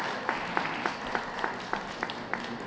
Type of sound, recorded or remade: recorded